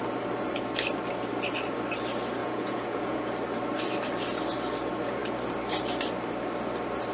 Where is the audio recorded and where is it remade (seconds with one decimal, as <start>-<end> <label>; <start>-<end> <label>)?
0.0-2.4 recorded; 2.4-3.3 remade; 3.3-7.1 recorded